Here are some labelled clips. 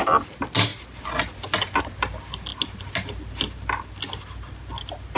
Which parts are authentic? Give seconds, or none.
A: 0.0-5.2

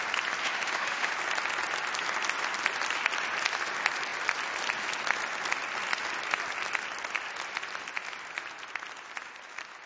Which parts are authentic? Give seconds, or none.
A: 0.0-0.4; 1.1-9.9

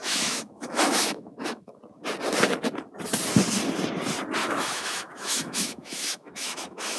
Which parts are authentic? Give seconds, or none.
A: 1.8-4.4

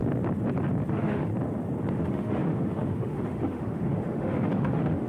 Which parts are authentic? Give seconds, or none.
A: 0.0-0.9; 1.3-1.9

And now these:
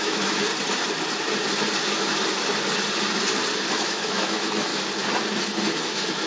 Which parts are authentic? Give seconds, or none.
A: 0.5-3.7; 4.7-5.8

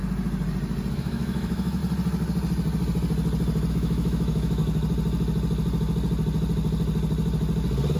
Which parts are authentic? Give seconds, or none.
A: 0.0-0.9; 1.8-3.7; 4.6-8.0